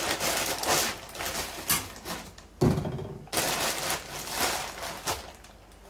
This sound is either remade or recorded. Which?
recorded